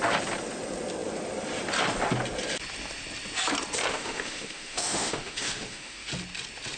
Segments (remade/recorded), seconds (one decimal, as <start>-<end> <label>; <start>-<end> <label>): 0.0-3.9 recorded; 3.9-6.1 remade; 6.1-6.8 recorded